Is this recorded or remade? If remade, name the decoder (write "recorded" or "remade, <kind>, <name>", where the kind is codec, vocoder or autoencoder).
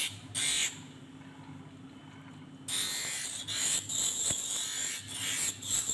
recorded